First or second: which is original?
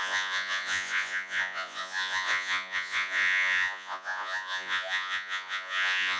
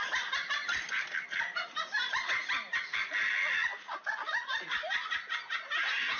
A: second